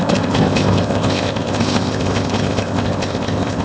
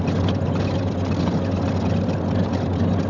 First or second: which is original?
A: second